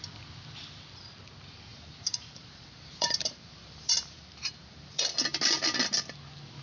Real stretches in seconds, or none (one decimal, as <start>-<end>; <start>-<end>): 0.0-1.7; 5.0-6.6